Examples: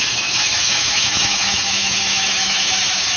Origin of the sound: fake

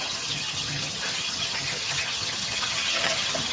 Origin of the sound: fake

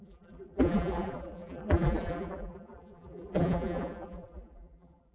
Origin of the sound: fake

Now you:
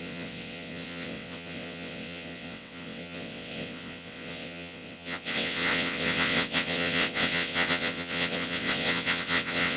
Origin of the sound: fake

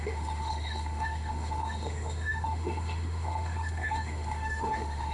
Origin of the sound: fake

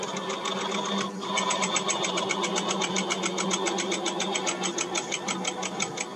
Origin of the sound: real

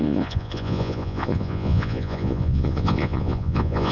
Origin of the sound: fake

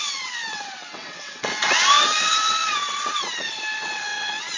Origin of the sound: fake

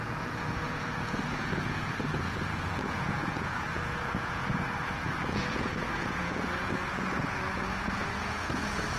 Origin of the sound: fake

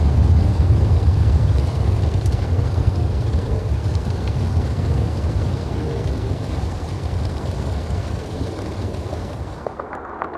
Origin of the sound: fake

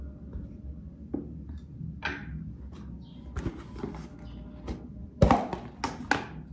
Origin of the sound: real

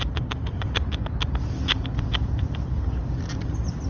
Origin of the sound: real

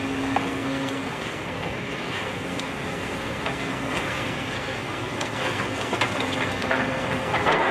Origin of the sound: fake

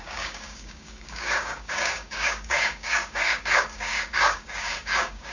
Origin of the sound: fake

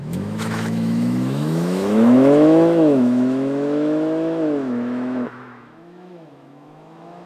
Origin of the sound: fake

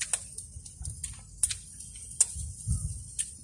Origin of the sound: real